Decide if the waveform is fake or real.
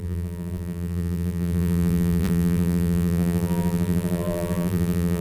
fake